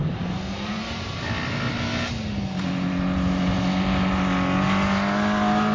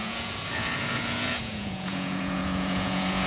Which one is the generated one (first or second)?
second